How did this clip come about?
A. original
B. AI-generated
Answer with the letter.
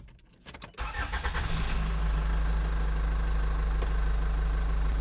A